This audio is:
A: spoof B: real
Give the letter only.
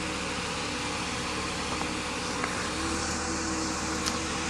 B